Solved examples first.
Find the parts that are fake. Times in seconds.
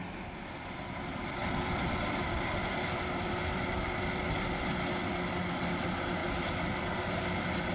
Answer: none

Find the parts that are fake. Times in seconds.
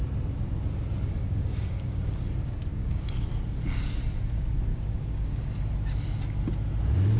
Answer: 1.2-2.0 (codec, DAC); 2.7-3.3; 4.7-5.4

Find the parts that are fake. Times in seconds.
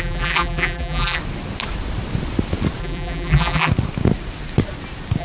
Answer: 0.0-1.2 (vocoder, BigVGAN v2); 2.8-3.7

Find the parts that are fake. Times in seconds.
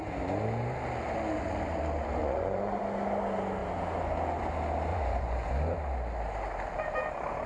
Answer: 2.2-2.8 (vocoder, Vocos); 4.9-5.5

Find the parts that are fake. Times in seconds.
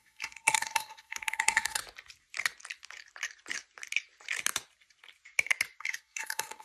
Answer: 0.0-1.8 (codec, SNAC); 5.8-6.6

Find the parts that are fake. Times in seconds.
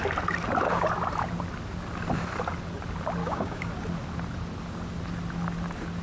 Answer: 3.2-3.7 (codec, DAC)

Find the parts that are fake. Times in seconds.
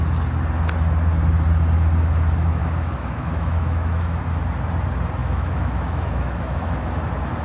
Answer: 2.6-4.2 (autoencoder, DAC-VAE); 5.2-6.9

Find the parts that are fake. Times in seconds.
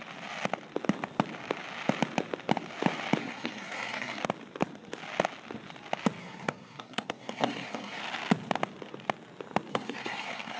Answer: 3.2-4.2 (codec, SNAC); 6.2-8.0; 9.7-10.6